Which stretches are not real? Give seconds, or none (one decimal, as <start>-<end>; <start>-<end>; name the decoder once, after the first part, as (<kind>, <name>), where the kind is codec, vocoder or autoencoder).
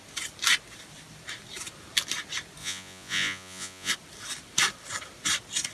2.6-3.9 (vocoder, Vocos)